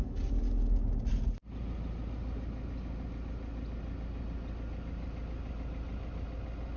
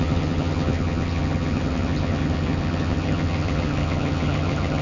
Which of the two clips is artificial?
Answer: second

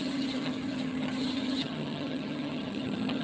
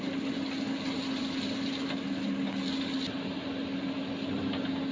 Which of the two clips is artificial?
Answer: first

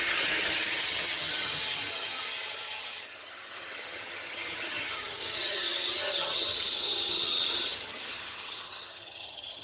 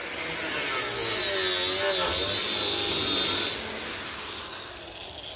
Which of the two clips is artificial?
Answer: first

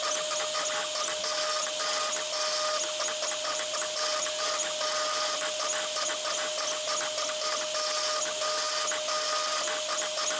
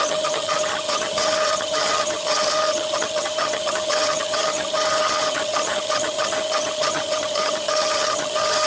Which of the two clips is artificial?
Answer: second